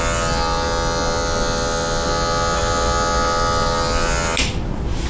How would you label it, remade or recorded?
recorded